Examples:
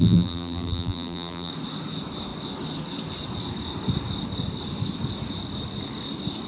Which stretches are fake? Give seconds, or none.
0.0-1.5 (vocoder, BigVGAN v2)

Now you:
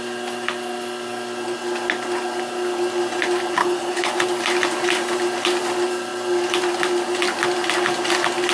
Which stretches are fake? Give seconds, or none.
3.6-4.1 (codec, HILCodec)

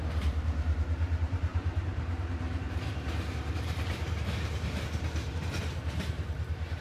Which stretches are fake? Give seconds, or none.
0.0-6.8 (vocoder, BigVGAN v2)

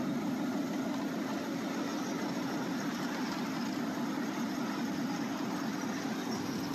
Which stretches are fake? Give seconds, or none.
none

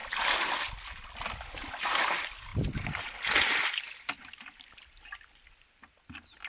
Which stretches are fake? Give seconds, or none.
none

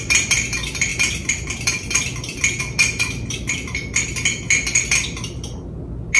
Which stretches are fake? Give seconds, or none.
none